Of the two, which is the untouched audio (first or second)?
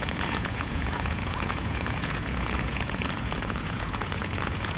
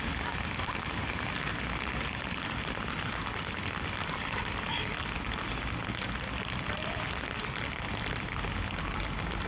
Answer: second